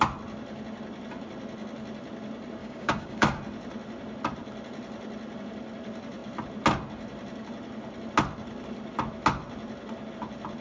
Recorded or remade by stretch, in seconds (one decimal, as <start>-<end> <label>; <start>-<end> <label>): 0.0-2.6 recorded; 2.6-3.4 remade; 3.4-10.6 recorded